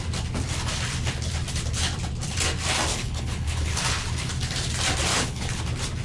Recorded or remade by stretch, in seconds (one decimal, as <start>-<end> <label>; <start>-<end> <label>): 0.0-2.9 recorded; 2.9-3.8 remade; 3.8-5.1 recorded; 5.1-5.6 remade; 5.6-6.0 recorded

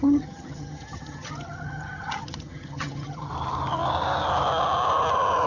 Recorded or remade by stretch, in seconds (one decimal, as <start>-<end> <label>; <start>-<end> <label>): 0.0-3.3 remade; 3.3-5.5 recorded